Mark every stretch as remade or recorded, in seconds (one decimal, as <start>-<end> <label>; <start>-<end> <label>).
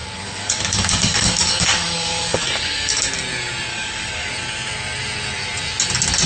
0.0-3.1 remade; 3.1-3.7 recorded; 3.7-4.3 remade; 4.3-6.3 recorded